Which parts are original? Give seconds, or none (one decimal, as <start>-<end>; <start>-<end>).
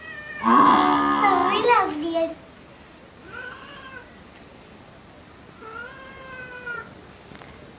0.0-7.8